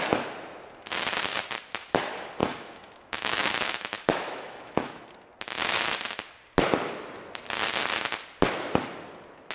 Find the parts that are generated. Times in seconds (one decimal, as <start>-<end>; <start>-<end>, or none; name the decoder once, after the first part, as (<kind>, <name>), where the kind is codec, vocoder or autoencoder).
2.4-5.0 (autoencoder, DAC-VAE)